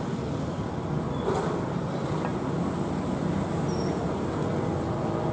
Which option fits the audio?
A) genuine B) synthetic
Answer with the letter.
A